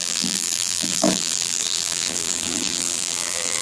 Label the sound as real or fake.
fake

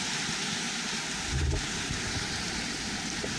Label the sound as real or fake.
fake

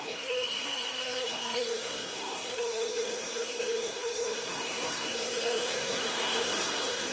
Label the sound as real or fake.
fake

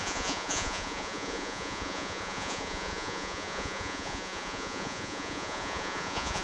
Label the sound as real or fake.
fake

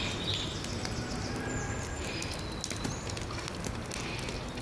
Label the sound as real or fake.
real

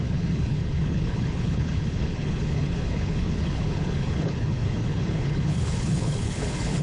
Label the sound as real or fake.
fake